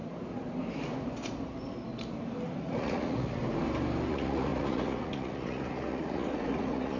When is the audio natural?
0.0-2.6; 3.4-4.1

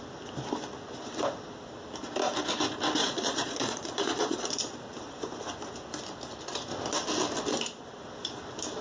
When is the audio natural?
0.0-3.0; 4.5-8.8

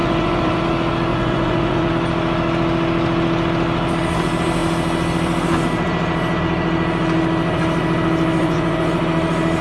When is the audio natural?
0.6-1.1; 1.9-8.4; 9.0-9.6

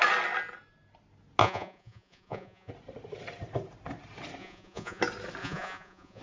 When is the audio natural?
0.0-1.4; 2.7-4.4; 5.0-5.4